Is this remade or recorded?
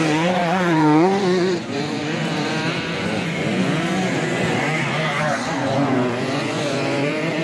remade